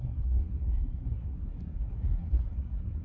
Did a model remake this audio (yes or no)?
yes